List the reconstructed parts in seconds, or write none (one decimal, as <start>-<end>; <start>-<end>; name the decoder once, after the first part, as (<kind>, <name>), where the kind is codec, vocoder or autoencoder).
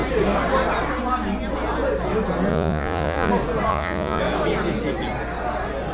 2.5-3.3 (vocoder, Vocos); 3.7-4.2